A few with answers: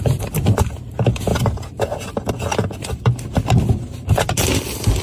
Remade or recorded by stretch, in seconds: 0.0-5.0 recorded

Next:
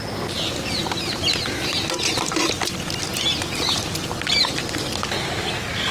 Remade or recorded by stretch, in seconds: 0.0-5.9 recorded

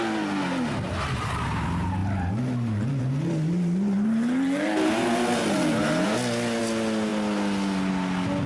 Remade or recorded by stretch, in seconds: 0.0-8.5 recorded

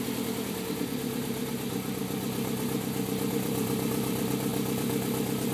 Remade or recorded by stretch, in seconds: 0.0-4.5 remade; 4.5-5.5 recorded

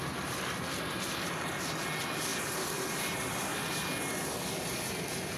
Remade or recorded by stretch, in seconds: 0.0-3.5 remade; 3.5-4.5 recorded; 4.5-5.4 remade

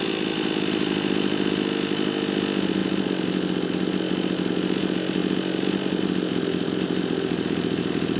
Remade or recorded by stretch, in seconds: 0.0-8.2 recorded

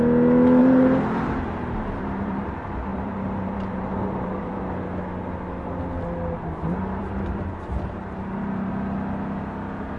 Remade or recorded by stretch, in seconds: 0.0-0.6 recorded; 0.6-2.5 remade; 2.5-2.9 recorded; 2.9-4.6 remade; 4.6-7.0 recorded; 7.0-8.7 remade; 8.7-10.0 recorded